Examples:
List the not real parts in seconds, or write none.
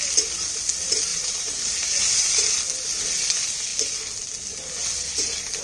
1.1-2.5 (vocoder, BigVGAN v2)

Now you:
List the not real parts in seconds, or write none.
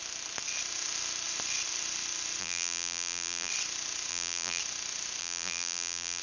2.4-3.5 (vocoder, BigVGAN v2); 4.1-4.6; 5.2-6.2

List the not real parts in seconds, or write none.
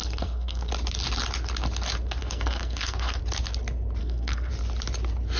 0.0-0.7 (codec, SNAC); 2.2-3.2; 4.0-4.5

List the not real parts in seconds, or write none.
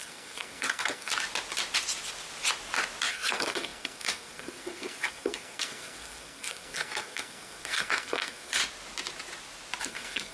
0.0-1.1 (codec, SNAC); 3.1-8.6; 9.8-10.3